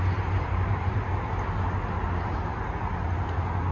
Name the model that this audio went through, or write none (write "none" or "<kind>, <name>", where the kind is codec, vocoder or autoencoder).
none